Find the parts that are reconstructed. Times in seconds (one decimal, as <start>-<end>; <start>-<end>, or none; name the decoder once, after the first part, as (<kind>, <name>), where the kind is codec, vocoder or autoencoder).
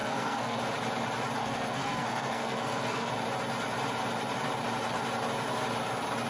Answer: 0.0-0.6 (codec, SNAC); 1.4-3.1